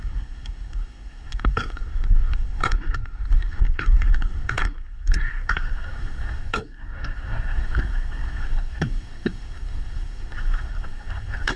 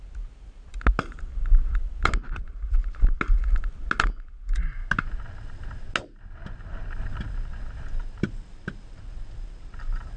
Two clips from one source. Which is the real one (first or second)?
second